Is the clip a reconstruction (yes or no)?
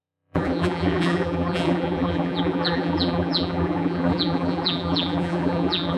yes